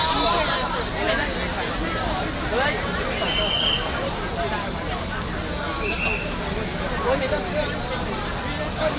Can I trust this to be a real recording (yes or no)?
yes